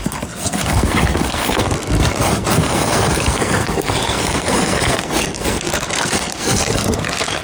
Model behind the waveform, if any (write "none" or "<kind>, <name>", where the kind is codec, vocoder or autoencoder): codec, SNAC